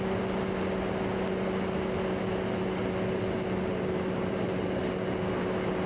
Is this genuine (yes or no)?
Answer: yes